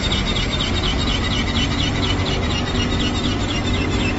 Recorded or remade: recorded